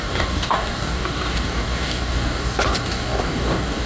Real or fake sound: fake